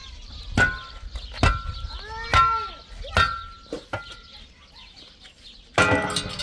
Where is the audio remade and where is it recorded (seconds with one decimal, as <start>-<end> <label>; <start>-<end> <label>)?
0.0-6.4 recorded